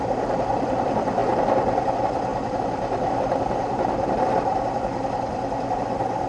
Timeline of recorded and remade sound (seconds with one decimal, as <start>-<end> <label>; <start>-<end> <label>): 0.0-6.3 remade